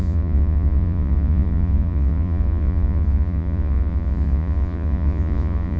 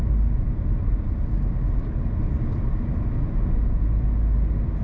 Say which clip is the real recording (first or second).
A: second